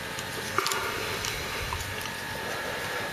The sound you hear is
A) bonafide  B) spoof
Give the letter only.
B